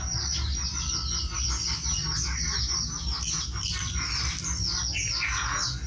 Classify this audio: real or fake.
real